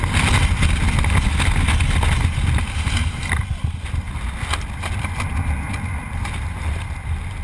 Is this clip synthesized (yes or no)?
no